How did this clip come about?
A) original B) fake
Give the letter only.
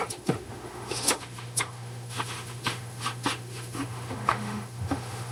B